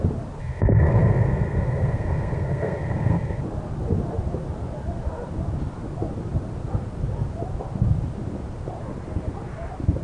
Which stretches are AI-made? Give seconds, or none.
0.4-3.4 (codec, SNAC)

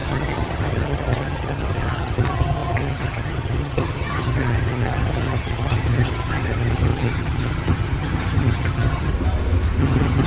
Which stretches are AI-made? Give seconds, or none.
0.0-9.1 (vocoder, HiFi-GAN); 9.8-10.3

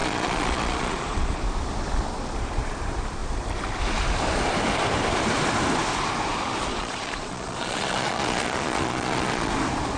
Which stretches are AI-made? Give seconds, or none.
0.0-1.4 (vocoder, Vocos); 6.7-9.5

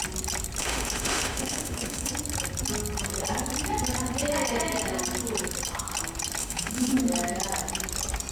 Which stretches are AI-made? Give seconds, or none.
0.6-2.1 (autoencoder, DAC-VAE); 6.4-7.0

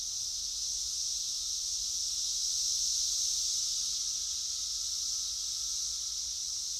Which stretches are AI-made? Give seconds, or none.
none

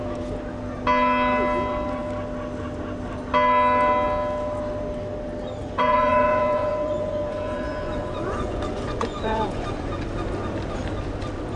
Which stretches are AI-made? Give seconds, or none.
5.6-10.0 (vocoder, Vocos)

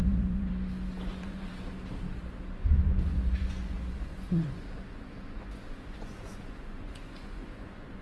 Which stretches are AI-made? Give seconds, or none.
0.0-0.5 (vocoder, Vocos); 1.1-1.5; 2.5-8.0

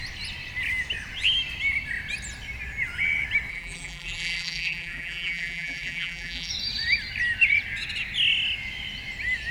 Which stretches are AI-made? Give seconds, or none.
3.5-6.5 (vocoder, BigVGAN v2)